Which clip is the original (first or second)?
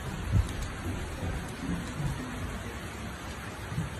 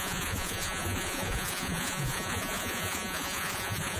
first